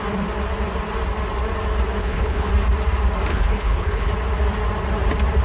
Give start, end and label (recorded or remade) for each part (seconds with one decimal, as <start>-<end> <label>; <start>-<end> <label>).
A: 0.0-2.0 recorded; 2.0-2.5 remade; 2.5-3.3 recorded; 3.3-4.1 remade; 4.1-5.4 recorded